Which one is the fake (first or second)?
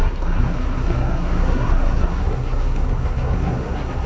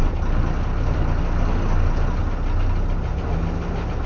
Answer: first